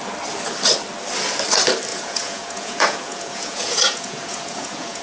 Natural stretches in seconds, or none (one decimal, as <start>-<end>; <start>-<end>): 0.0-1.9